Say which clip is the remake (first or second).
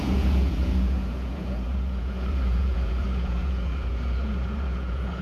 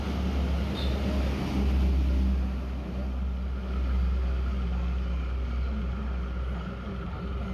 first